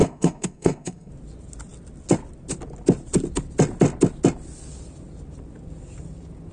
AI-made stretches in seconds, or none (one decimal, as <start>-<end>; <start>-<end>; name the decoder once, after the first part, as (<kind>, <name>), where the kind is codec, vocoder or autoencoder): 0.0-1.1 (codec, SNAC)